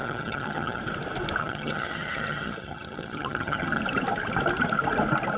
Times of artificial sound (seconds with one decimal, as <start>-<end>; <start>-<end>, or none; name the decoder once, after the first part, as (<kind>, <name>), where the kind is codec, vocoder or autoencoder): 0.0-0.8 (vocoder, HiFi-GAN); 1.4-3.8